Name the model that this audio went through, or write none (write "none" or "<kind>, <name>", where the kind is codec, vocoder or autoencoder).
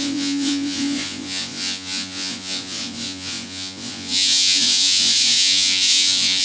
vocoder, Vocos